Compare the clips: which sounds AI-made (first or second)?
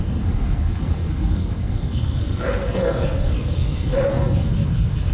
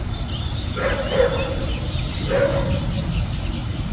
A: first